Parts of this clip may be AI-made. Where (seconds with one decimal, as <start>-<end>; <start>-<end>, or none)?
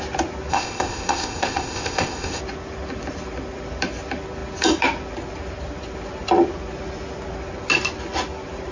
0.5-2.4